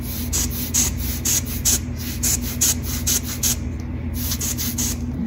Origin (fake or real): real